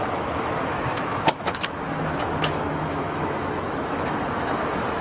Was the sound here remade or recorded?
remade